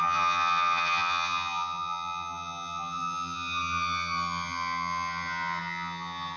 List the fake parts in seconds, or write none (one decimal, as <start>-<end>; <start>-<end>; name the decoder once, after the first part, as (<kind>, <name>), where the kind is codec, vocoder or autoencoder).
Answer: 0.0-6.4 (vocoder, HiFi-GAN)